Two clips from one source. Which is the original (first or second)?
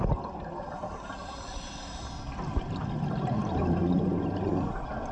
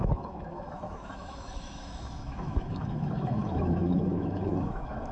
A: first